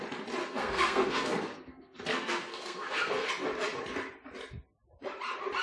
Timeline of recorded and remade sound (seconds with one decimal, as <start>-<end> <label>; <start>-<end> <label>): 0.0-0.4 recorded; 0.4-3.3 remade; 3.3-5.6 recorded

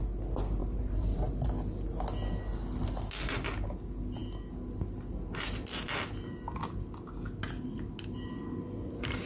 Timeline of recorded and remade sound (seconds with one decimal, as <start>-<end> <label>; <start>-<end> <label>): 0.0-0.6 recorded; 0.6-1.3 remade; 1.3-9.3 recorded

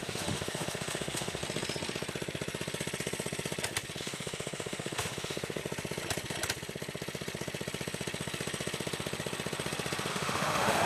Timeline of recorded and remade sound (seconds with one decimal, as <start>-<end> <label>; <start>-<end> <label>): 0.0-1.4 remade; 1.4-4.0 recorded; 4.0-5.6 remade; 5.6-10.1 recorded; 10.1-10.9 remade

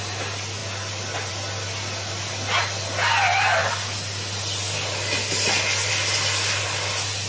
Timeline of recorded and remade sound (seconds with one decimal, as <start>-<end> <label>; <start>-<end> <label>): 0.0-7.3 recorded

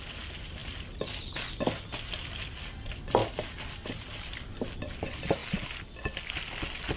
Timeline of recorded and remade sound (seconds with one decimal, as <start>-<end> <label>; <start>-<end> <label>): 0.0-7.0 recorded

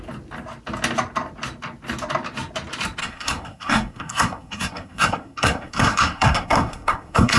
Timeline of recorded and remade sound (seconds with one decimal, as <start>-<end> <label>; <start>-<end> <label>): 0.0-3.0 recorded; 3.0-7.4 remade